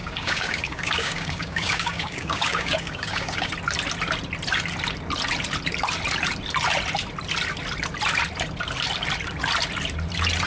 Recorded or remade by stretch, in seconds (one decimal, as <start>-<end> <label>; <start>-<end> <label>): 0.0-3.5 remade; 3.5-10.5 recorded